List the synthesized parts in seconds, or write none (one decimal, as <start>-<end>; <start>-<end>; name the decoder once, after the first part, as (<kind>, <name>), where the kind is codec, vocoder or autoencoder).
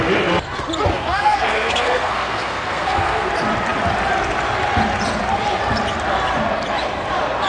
0.9-3.3 (codec, SNAC)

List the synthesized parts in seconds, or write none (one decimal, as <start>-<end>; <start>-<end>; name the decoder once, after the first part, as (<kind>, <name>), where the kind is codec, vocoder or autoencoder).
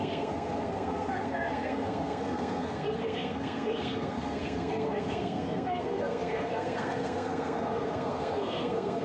0.0-9.0 (codec, SNAC)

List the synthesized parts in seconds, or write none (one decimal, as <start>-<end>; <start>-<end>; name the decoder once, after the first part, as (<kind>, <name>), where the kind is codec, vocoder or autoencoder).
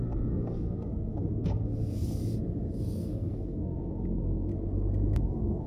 0.0-2.2 (codec, SNAC); 2.7-4.5; 5.2-5.7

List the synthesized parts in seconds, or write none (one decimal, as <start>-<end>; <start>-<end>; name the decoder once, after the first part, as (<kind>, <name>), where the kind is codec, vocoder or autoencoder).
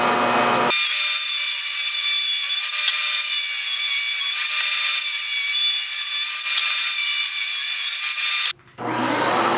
none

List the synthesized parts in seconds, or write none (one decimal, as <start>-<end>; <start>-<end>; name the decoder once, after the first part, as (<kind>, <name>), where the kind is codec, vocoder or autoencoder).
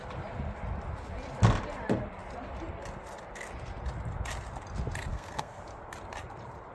5.1-5.6 (codec, SNAC)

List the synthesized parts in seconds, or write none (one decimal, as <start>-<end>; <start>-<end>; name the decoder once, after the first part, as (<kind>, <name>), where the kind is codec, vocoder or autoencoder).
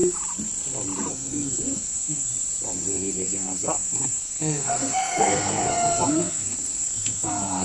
1.1-2.3 (codec, SNAC); 2.9-7.6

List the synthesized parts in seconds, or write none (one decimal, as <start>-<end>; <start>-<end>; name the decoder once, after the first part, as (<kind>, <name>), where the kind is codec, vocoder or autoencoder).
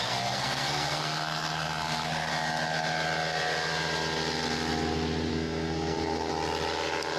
0.0-2.3 (codec, SNAC); 5.3-6.3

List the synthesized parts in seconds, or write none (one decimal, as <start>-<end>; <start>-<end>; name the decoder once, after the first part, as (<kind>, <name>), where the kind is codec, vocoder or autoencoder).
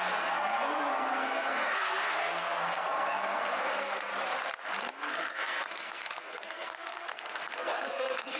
0.0-4.1 (codec, SNAC); 4.8-8.4